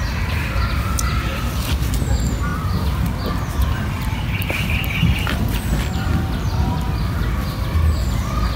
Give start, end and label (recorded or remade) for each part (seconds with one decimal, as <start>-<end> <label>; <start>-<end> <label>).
0.0-8.6 recorded